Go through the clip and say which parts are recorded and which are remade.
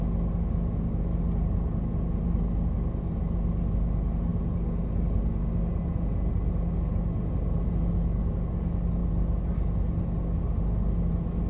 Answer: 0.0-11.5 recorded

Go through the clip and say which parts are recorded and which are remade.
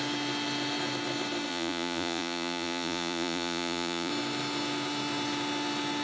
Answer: 0.0-1.5 recorded; 1.5-4.1 remade; 4.1-6.0 recorded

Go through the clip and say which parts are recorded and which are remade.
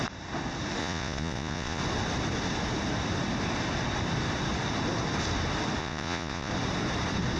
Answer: 0.0-0.8 recorded; 0.8-1.8 remade; 1.8-5.8 recorded; 5.8-6.5 remade; 6.5-7.4 recorded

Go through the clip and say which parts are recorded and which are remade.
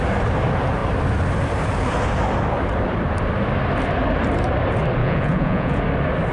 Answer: 0.0-5.0 recorded; 5.0-5.8 remade; 5.8-6.3 recorded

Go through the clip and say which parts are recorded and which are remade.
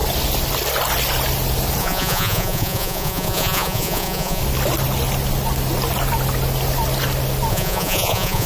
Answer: 0.0-1.8 recorded; 1.8-4.4 remade; 4.4-7.5 recorded; 7.5-8.5 remade